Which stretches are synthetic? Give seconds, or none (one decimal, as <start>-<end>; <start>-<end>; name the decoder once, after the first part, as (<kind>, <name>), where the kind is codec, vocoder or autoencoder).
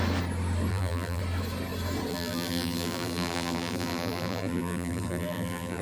0.7-1.2 (vocoder, BigVGAN v2); 2.1-5.8